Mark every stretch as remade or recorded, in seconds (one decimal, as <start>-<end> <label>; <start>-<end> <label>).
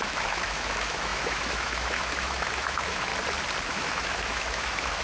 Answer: 0.0-3.1 remade; 3.1-3.7 recorded; 3.7-5.0 remade